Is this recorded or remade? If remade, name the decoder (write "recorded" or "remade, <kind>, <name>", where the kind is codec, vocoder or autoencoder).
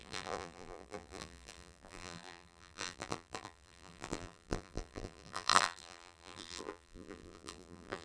remade, vocoder, BigVGAN v2